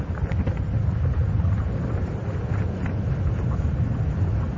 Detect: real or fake real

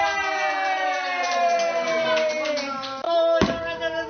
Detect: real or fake fake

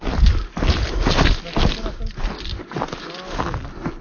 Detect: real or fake real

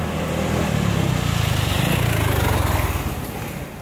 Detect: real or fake real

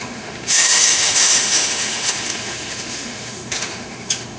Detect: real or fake fake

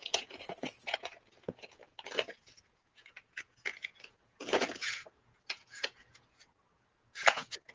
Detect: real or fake fake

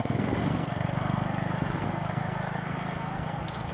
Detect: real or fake fake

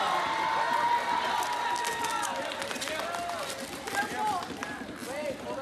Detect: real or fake real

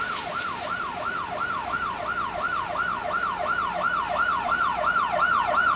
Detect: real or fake real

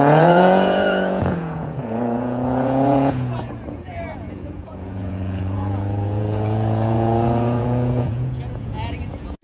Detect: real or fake fake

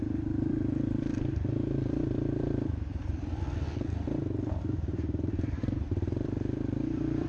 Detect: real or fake fake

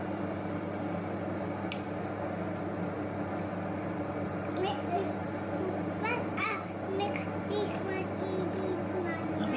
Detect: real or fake real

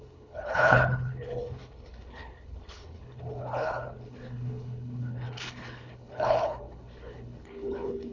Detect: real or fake fake